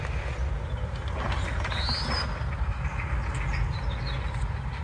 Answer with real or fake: real